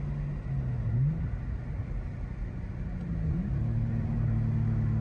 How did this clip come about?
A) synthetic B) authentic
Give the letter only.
B